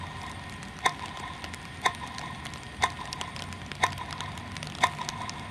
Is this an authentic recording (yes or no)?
yes